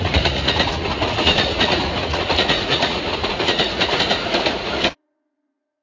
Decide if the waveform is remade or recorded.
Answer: remade